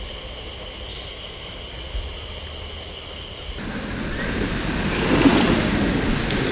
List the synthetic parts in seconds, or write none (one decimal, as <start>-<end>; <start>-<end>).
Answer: 0.9-1.6